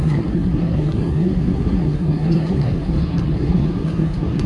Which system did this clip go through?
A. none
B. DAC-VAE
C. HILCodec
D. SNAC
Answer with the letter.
D